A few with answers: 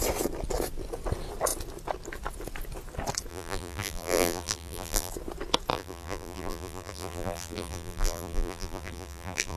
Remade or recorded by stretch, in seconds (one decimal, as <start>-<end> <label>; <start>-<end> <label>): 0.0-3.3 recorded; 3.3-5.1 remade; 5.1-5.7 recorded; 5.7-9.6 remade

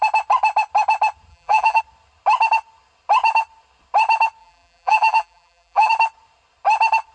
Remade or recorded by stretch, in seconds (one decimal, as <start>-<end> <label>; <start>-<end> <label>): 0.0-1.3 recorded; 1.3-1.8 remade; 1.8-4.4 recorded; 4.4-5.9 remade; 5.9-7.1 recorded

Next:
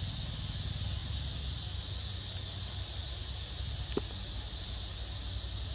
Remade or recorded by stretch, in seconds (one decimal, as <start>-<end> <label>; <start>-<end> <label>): 0.0-5.7 recorded